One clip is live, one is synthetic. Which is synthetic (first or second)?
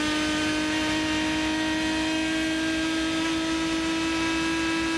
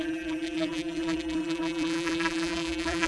second